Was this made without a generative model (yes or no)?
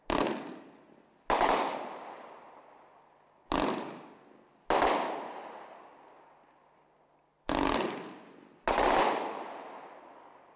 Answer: yes